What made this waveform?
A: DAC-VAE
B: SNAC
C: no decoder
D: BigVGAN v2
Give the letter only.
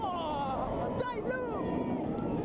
C